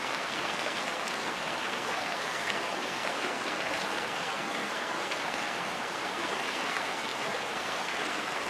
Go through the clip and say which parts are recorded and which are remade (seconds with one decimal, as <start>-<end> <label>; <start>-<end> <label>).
0.0-8.5 remade